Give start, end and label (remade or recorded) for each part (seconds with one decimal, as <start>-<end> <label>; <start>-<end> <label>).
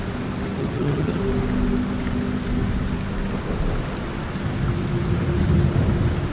0.0-0.6 recorded; 0.6-1.2 remade; 1.2-6.3 recorded